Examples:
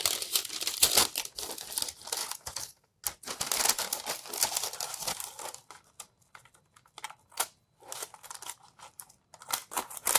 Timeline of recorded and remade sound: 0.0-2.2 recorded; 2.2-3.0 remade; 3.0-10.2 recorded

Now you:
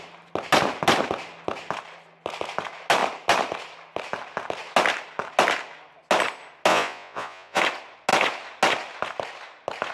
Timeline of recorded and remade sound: 0.0-6.7 recorded; 6.7-7.6 remade; 7.6-9.9 recorded

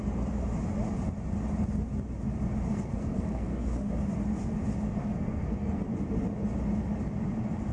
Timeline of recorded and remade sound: 0.0-2.7 recorded; 2.7-3.9 remade; 3.9-5.0 recorded; 5.0-5.8 remade; 5.8-7.7 recorded

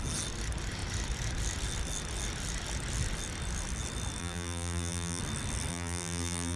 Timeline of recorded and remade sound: 0.0-4.2 recorded; 4.2-5.2 remade; 5.2-5.7 recorded; 5.7-6.6 remade

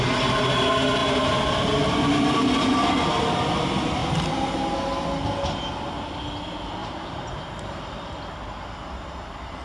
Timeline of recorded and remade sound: 0.0-1.0 recorded; 1.0-2.0 remade; 2.0-6.8 recorded; 6.8-7.8 remade; 7.8-9.6 recorded